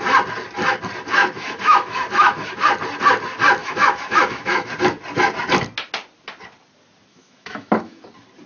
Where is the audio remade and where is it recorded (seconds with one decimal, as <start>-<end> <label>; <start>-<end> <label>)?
0.0-1.2 recorded; 1.2-2.5 remade; 2.5-3.6 recorded; 3.6-4.7 remade; 4.7-7.1 recorded; 7.1-8.0 remade; 8.0-8.5 recorded